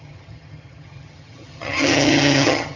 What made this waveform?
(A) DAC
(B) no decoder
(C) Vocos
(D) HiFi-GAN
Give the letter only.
D